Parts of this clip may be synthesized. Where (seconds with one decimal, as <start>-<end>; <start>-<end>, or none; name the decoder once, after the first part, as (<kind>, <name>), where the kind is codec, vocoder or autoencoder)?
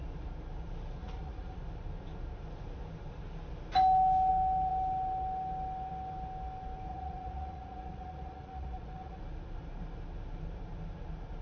1.0-1.6 (vocoder, Vocos); 6.9-9.2